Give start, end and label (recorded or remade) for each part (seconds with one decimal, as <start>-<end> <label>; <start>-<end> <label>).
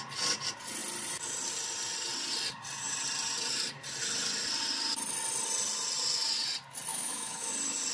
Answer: 0.0-6.9 recorded; 6.9-7.5 remade; 7.5-7.9 recorded